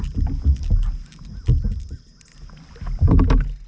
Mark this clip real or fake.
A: real